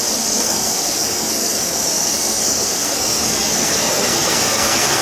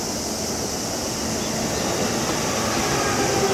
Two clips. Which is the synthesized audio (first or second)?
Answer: first